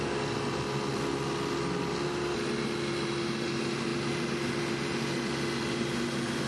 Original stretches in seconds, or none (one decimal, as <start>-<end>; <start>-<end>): 0.0-6.5